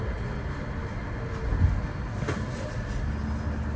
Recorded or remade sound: recorded